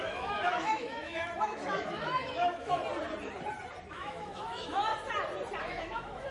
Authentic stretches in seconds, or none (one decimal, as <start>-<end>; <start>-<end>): 2.8-3.9; 4.9-5.6